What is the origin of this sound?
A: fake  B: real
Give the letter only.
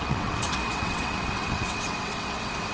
A